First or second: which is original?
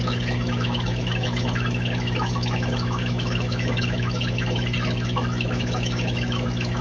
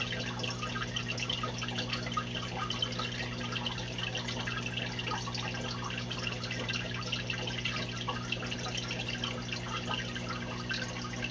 second